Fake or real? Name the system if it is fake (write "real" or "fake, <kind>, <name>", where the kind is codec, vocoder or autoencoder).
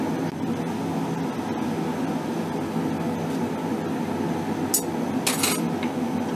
real